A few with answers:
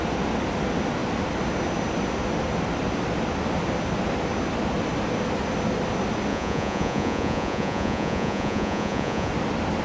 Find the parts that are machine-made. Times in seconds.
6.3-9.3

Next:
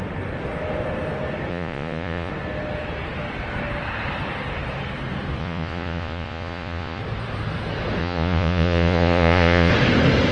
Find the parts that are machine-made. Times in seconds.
1.5-2.3; 5.4-7.0; 8.0-9.7